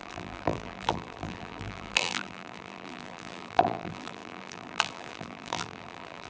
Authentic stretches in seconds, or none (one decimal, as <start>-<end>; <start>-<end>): none